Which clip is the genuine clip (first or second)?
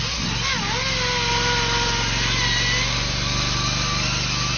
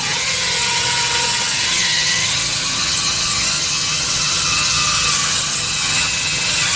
first